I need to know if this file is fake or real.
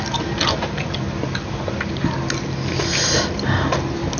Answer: real